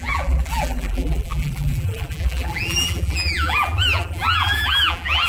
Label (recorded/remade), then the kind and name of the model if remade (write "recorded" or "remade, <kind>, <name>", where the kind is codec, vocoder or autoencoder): remade, vocoder, BigVGAN v2